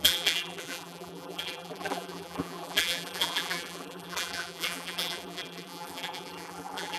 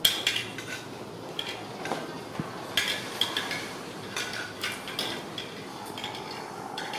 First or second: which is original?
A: second